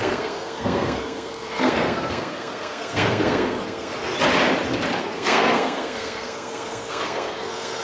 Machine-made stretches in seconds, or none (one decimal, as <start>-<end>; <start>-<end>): 0.0-3.9; 5.0-7.8

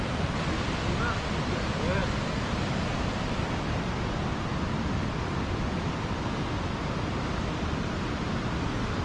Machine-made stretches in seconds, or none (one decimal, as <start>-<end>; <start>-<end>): none

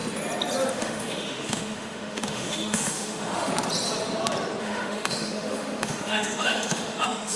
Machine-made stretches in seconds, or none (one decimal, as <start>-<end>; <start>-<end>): 0.7-3.5; 4.6-7.4

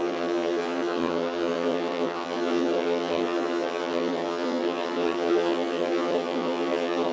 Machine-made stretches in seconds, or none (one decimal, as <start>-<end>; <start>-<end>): 0.0-7.1

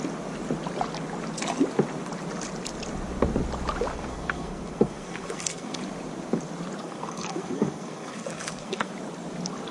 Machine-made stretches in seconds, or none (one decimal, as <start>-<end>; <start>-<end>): 3.9-5.8; 6.8-8.9

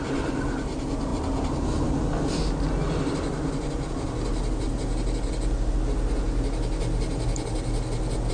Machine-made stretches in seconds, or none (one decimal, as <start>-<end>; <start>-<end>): none

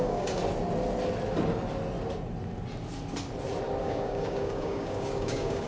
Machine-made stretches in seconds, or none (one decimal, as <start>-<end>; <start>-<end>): 0.0-0.4; 3.8-5.7

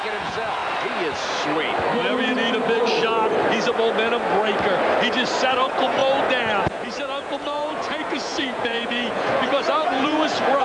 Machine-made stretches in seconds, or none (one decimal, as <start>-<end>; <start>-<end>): 0.0-0.6; 5.5-6.0; 6.7-10.6